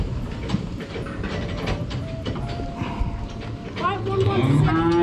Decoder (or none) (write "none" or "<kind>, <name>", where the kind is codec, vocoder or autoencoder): none